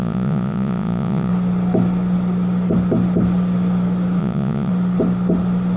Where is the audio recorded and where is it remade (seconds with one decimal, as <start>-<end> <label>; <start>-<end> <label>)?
0.0-1.3 remade; 1.3-4.2 recorded; 4.2-4.7 remade; 4.7-5.8 recorded